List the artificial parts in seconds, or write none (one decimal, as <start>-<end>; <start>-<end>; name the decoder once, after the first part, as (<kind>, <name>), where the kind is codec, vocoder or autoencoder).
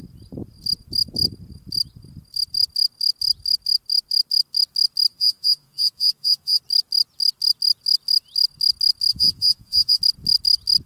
5.1-6.6 (vocoder, Vocos); 9.1-10.0